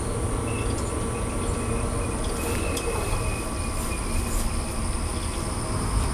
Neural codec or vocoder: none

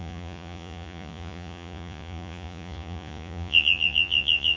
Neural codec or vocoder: vocoder, Vocos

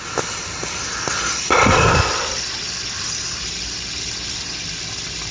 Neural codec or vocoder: none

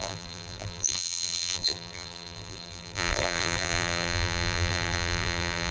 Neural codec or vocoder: vocoder, BigVGAN v2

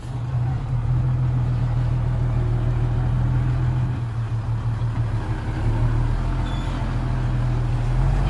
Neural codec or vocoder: none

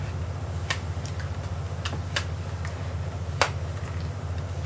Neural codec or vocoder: none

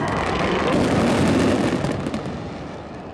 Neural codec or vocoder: none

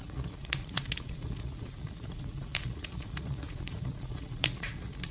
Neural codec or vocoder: vocoder, Vocos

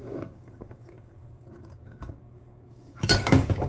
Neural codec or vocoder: codec, DAC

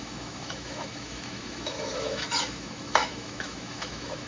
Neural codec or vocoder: autoencoder, DAC-VAE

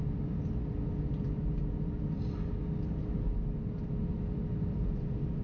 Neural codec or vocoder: none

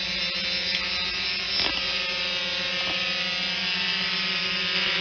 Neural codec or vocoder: none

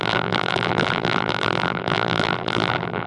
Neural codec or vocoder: vocoder, BigVGAN v2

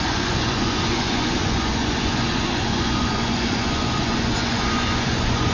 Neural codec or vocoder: vocoder, Vocos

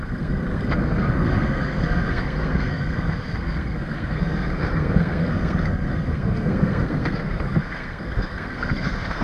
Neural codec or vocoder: codec, SNAC